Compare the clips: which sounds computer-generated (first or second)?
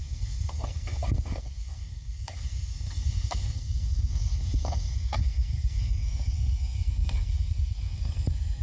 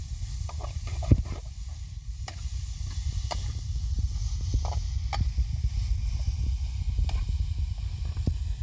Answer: first